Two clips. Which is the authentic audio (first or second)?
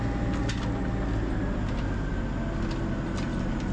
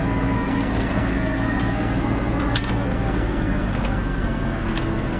first